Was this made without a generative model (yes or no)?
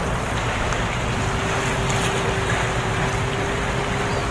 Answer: yes